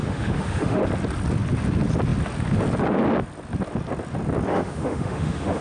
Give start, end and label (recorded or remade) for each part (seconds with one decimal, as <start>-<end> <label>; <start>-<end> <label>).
0.0-0.8 remade; 0.8-4.5 recorded; 4.5-5.6 remade